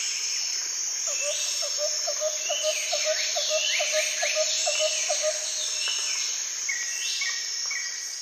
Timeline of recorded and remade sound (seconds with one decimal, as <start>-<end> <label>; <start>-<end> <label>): 0.0-0.8 remade; 0.8-3.3 recorded; 3.3-4.6 remade; 4.6-6.7 recorded; 6.7-8.2 remade